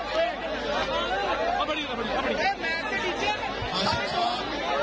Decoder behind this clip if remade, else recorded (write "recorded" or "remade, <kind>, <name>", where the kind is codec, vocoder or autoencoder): recorded